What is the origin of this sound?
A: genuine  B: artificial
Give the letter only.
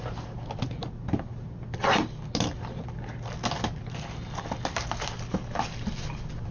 A